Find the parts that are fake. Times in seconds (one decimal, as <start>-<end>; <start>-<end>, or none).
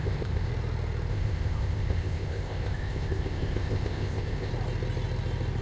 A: 0.0-0.5; 1.1-4.5